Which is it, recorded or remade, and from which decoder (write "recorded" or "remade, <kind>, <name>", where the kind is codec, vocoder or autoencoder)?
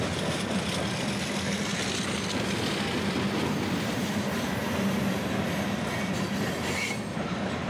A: recorded